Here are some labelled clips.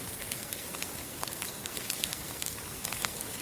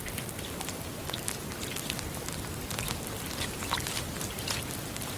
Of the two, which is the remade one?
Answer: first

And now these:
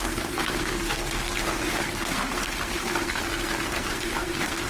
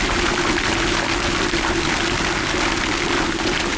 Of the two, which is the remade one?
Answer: first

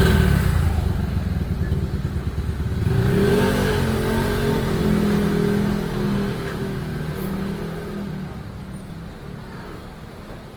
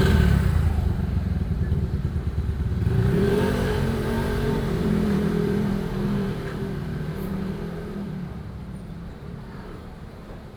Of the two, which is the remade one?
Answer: second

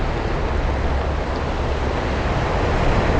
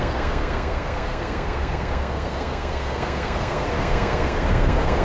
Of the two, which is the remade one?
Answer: second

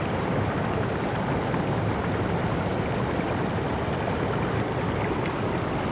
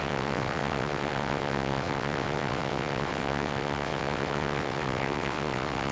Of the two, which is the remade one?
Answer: second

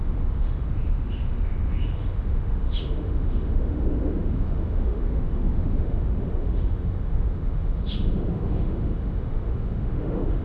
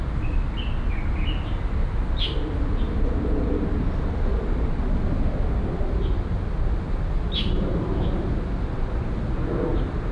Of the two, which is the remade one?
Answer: first